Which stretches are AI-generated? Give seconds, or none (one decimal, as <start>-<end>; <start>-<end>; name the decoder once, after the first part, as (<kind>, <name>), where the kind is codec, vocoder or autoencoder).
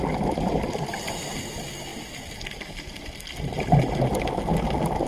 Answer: none